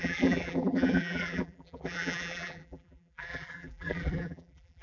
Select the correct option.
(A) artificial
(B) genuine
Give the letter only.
A